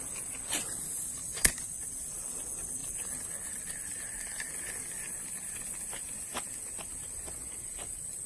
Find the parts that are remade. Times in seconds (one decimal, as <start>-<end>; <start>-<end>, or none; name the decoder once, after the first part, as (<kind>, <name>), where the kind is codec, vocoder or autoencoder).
none